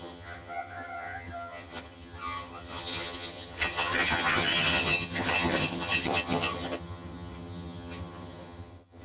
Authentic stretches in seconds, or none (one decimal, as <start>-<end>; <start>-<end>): none

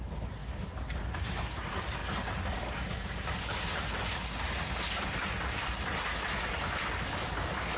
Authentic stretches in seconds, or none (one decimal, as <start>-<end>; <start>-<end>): 0.0-7.8

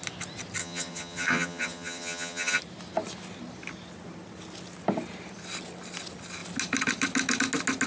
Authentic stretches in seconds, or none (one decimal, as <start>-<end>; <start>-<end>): 0.0-0.6; 2.6-7.9

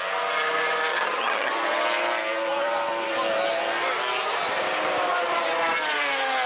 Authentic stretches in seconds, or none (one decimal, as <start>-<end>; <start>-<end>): 0.0-0.9; 1.5-6.5

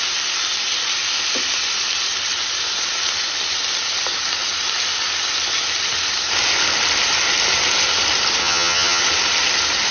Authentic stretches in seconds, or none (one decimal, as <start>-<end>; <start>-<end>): 0.0-8.4; 9.0-9.9

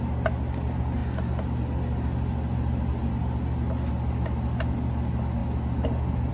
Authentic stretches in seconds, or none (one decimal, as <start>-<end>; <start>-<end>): 0.0-6.3

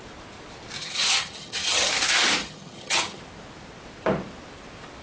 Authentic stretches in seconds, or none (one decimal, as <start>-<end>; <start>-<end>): 0.0-0.8; 1.9-2.4; 3.2-5.0